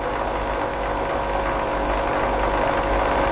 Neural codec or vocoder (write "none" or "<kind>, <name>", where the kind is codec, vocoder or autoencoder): none